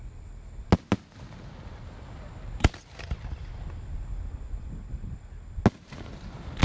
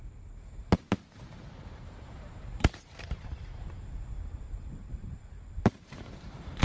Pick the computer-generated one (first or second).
second